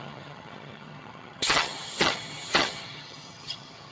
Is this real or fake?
fake